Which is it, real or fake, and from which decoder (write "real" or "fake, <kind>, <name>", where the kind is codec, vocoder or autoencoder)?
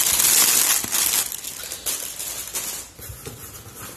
real